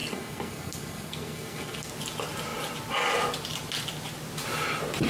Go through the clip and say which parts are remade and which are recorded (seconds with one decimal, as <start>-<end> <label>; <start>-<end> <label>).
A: 0.0-1.9 remade; 1.9-5.1 recorded